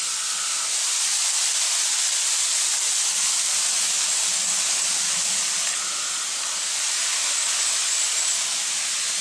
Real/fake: real